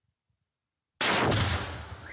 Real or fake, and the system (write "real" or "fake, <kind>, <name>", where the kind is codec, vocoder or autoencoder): real